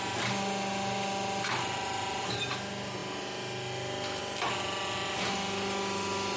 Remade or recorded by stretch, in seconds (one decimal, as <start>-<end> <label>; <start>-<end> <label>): 0.0-6.4 recorded